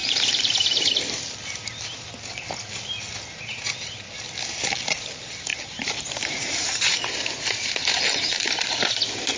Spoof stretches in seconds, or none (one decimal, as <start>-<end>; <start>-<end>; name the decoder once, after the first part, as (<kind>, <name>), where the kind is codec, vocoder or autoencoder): 0.0-0.9 (vocoder, BigVGAN v2); 5.5-8.6